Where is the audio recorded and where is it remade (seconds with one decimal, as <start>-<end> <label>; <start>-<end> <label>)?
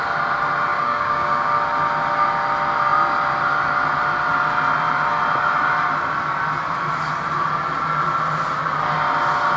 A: 0.0-0.7 recorded; 0.7-1.5 remade; 1.5-9.6 recorded